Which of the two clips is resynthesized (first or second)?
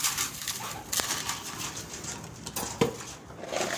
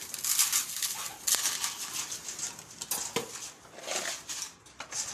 first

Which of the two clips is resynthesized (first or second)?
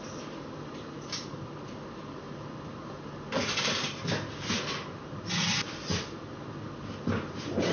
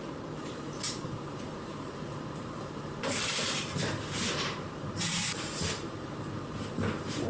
second